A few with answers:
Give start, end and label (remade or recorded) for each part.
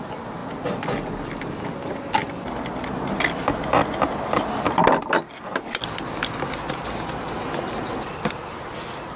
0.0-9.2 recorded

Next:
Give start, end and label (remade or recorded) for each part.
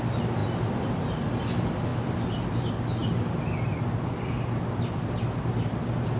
0.0-6.2 recorded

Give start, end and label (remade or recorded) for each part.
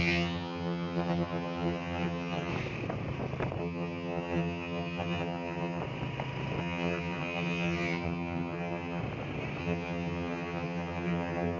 0.0-2.5 remade; 2.5-3.6 recorded; 3.6-5.8 remade; 5.8-6.6 recorded; 6.6-9.0 remade; 9.0-9.6 recorded; 9.6-11.6 remade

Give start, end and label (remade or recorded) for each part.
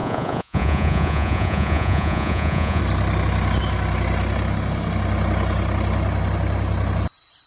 0.0-2.8 remade; 2.8-7.5 recorded